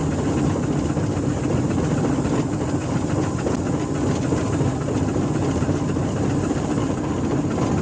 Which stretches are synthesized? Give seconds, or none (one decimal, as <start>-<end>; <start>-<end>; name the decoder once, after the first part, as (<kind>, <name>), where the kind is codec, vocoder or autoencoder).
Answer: none